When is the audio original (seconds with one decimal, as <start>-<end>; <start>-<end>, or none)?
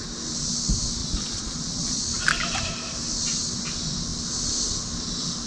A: 0.0-1.0; 2.0-5.5